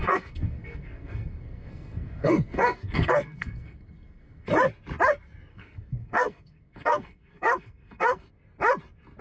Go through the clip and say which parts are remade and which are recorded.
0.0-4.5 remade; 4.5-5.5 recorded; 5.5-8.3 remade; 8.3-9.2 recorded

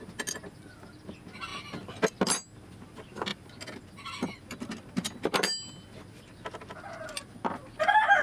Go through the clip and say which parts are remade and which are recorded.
0.0-8.2 recorded

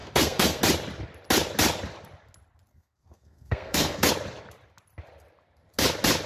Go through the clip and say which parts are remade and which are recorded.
0.0-0.6 remade; 0.6-2.7 recorded; 2.7-4.1 remade; 4.1-6.3 recorded

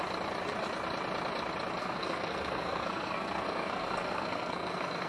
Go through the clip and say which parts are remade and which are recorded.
0.0-1.8 recorded; 1.8-5.1 remade

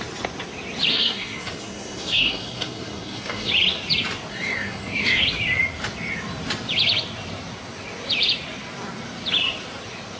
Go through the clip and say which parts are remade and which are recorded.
0.0-0.9 recorded; 0.9-3.5 remade; 3.5-4.3 recorded; 4.3-5.2 remade; 5.2-10.2 recorded